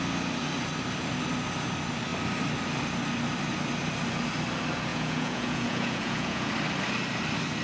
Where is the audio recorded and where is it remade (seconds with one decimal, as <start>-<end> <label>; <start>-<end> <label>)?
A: 0.0-4.9 recorded; 4.9-6.5 remade; 6.5-7.6 recorded